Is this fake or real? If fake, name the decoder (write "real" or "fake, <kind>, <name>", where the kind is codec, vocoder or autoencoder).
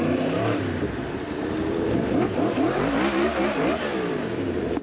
fake, vocoder, BigVGAN v2